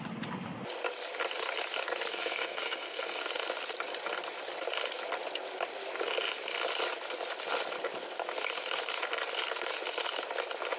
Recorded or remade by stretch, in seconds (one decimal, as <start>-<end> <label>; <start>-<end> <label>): 0.0-2.1 recorded; 2.1-3.2 remade; 3.2-10.8 recorded